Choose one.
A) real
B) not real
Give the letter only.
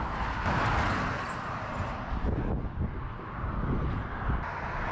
A